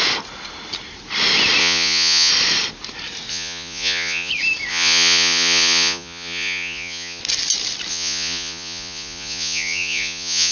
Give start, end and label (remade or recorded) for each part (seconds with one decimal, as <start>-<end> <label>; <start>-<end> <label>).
0.0-1.6 recorded; 1.6-2.3 remade; 2.3-3.3 recorded; 3.3-4.3 remade; 4.3-4.7 recorded; 4.7-7.2 remade; 7.2-7.9 recorded; 7.9-10.5 remade